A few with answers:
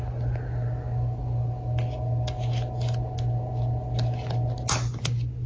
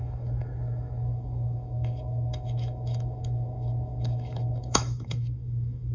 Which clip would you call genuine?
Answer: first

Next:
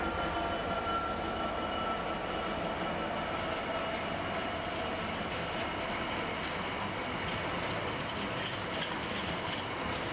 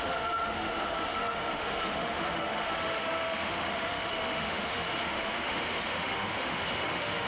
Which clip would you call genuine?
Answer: first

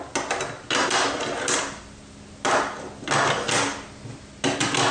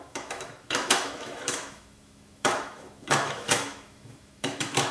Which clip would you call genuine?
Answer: first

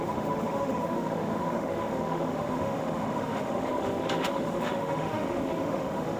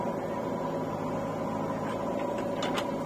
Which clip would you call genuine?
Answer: second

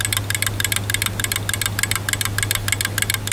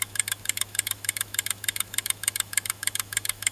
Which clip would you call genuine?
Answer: first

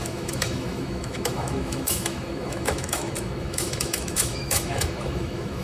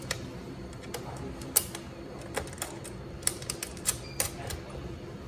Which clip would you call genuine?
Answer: second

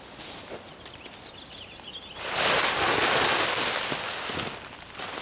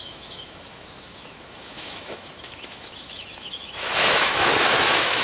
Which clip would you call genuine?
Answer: first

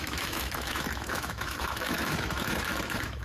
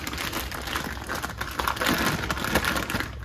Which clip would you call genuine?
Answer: second